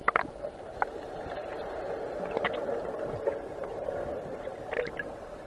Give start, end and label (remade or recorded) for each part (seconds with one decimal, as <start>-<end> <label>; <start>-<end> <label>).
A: 0.0-1.4 recorded; 1.4-4.7 remade; 4.7-5.5 recorded